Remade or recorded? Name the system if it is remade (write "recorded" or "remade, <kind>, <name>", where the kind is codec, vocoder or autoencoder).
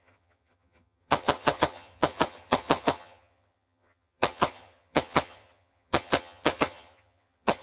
remade, vocoder, HiFi-GAN